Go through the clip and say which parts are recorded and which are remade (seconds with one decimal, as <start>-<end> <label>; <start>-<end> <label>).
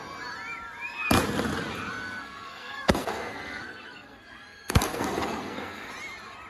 0.0-2.0 recorded; 2.0-5.9 remade; 5.9-6.5 recorded